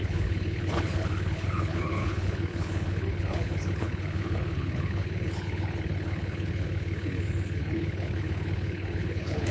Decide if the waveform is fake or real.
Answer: fake